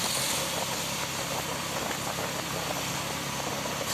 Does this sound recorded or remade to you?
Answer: recorded